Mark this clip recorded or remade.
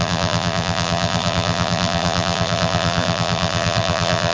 remade